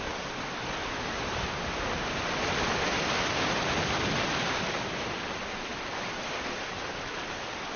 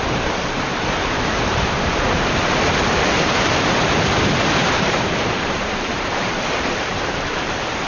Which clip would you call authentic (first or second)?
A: first